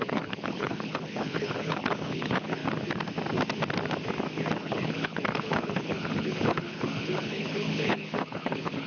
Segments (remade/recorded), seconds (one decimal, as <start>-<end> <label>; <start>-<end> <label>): 0.0-2.6 remade; 2.6-4.6 recorded; 4.6-8.9 remade